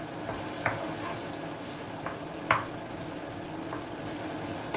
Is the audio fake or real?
real